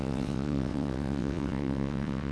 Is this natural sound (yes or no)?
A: no